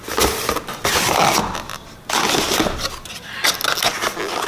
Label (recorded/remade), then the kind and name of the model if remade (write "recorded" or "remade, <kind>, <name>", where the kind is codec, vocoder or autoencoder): recorded